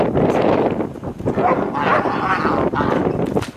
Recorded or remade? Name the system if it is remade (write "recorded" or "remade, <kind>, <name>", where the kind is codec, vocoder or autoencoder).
recorded